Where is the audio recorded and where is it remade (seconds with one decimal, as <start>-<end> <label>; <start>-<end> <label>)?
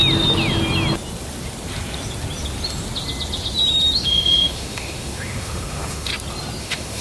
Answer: 0.0-4.1 recorded; 4.1-6.1 remade; 6.1-6.6 recorded; 6.6-7.0 remade